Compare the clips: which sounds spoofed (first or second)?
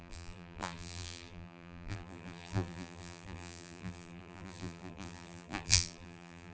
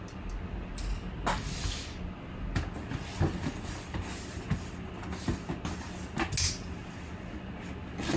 first